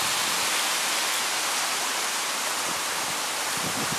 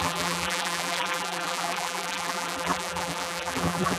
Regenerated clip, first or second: second